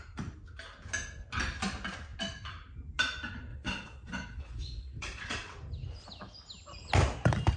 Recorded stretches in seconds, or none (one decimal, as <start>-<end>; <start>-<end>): 0.0-3.5; 5.3-7.6